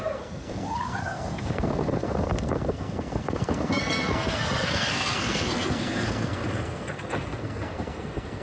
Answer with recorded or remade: remade